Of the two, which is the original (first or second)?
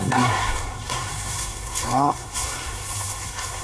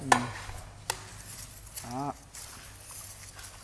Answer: second